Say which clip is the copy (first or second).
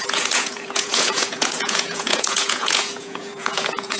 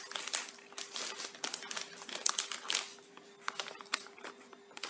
first